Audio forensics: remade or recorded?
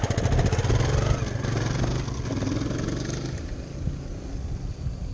recorded